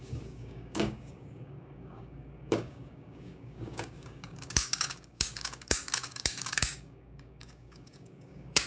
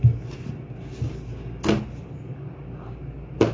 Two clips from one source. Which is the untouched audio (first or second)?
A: second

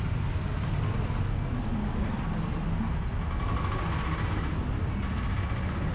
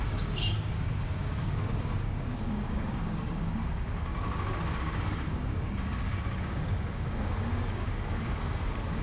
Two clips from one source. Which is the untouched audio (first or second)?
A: first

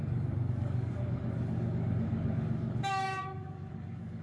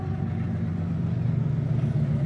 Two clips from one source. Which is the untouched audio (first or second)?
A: second